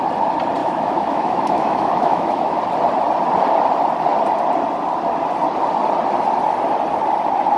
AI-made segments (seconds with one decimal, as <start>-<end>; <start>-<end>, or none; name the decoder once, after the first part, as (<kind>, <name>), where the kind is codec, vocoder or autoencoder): 0.6-2.6 (autoencoder, DAC-VAE)